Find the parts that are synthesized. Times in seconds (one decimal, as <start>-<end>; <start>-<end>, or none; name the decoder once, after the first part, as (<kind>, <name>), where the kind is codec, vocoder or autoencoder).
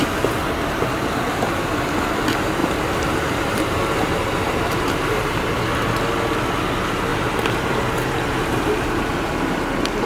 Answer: 2.6-5.6 (vocoder, BigVGAN v2); 7.1-9.2